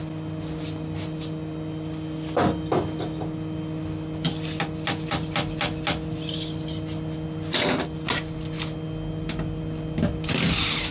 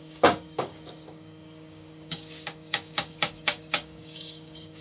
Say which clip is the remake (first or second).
second